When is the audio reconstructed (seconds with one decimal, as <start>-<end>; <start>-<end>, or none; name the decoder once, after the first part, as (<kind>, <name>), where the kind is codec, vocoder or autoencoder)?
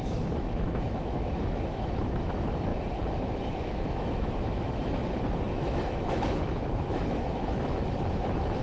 0.0-2.7 (autoencoder, DAC-VAE); 3.2-8.6